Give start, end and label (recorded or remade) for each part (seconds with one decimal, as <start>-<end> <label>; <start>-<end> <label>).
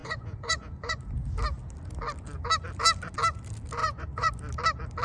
0.0-1.0 remade; 1.0-3.8 recorded; 3.8-4.3 remade; 4.3-5.0 recorded